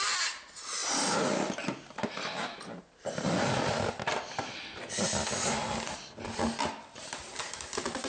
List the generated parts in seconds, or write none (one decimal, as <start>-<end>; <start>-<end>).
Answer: 0.8-4.9